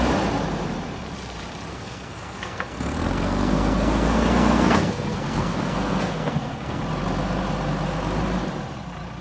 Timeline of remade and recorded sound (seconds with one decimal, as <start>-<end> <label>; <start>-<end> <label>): 0.0-1.7 recorded; 1.7-6.8 remade; 6.8-9.2 recorded